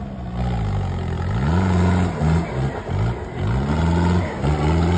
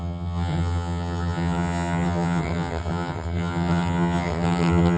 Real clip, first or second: first